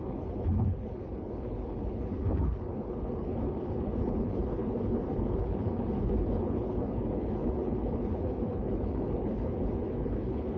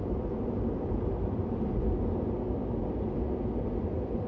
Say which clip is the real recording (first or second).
second